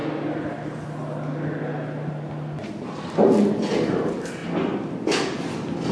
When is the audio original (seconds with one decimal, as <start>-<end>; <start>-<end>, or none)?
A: 0.0-5.9